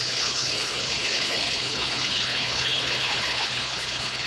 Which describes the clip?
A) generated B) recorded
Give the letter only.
A